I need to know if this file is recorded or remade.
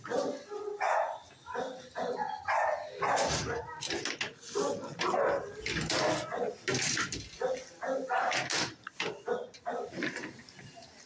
recorded